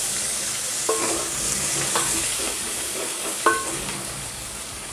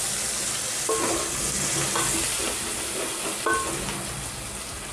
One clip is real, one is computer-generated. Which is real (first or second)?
second